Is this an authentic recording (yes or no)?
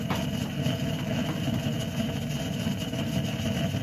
yes